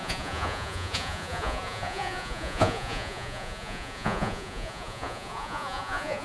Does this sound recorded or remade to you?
remade